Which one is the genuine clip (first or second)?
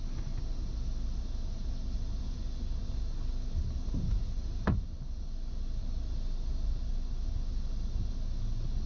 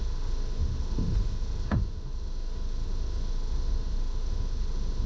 first